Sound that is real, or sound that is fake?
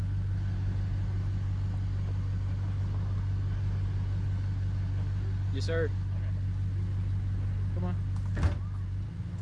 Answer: real